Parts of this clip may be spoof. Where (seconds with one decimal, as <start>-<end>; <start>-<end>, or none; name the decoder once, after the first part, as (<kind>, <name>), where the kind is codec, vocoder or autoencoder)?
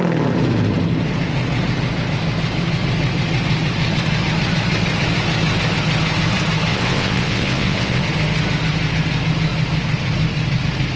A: 6.7-8.0 (vocoder, WaveNeXt)